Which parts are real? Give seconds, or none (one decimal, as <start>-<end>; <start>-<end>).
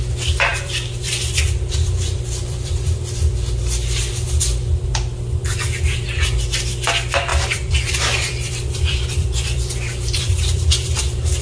0.0-0.5; 3.0-7.3; 11.0-11.4